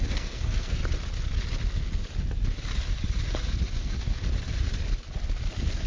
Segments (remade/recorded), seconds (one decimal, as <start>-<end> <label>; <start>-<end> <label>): 0.0-0.8 remade; 0.8-3.8 recorded; 3.8-4.2 remade; 4.2-5.9 recorded

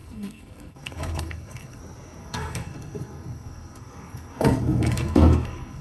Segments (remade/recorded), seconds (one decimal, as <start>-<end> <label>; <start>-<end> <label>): 0.0-1.8 remade; 1.8-2.2 recorded; 2.2-5.8 remade

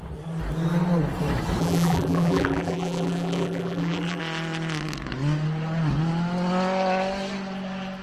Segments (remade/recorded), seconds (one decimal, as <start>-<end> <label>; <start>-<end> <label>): 0.0-1.6 recorded; 1.6-4.2 remade; 4.2-8.0 recorded

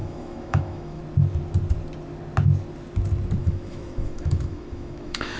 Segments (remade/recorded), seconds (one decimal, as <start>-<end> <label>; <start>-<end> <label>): 0.0-1.0 remade; 1.0-3.4 recorded; 3.4-5.4 remade